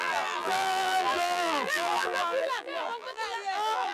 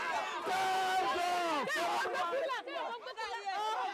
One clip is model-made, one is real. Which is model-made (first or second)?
first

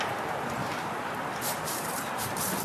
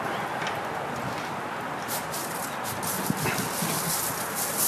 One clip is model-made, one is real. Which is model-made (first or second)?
first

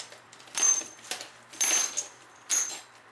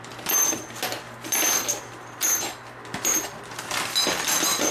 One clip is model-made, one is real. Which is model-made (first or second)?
first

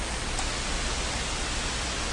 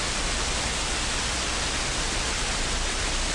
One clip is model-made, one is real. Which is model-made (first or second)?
second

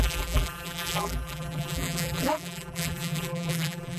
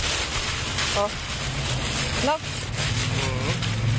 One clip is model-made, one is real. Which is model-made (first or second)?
first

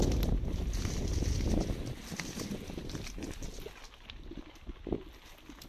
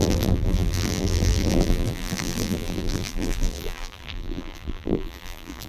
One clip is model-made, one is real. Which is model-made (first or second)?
second